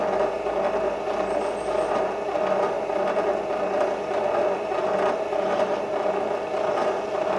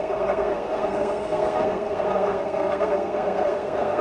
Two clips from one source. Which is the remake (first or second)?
second